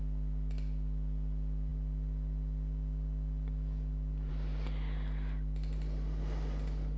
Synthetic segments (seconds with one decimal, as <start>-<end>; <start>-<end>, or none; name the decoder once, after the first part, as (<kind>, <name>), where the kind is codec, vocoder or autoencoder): none